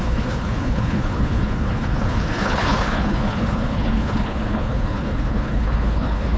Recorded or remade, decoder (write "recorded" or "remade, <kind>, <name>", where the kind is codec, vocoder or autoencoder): remade, codec, HILCodec